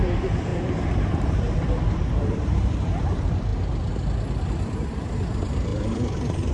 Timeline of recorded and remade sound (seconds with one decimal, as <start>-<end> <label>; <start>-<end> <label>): 0.0-3.5 remade; 3.5-4.9 recorded; 4.9-6.5 remade